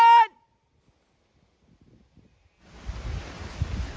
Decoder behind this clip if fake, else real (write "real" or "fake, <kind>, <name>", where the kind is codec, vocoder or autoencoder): real